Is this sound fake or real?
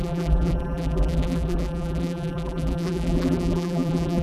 fake